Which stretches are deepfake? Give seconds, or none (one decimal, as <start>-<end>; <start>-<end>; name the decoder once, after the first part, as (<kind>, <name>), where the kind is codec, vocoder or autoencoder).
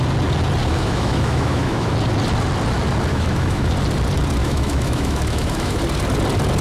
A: 0.7-1.9 (autoencoder, DAC-VAE); 3.1-3.7; 4.4-5.8